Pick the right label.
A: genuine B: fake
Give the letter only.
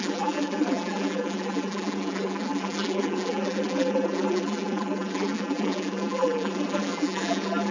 B